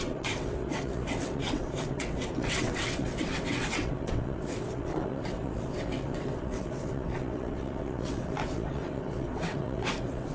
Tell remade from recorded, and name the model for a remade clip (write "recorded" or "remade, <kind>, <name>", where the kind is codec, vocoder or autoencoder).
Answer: remade, vocoder, WaveNeXt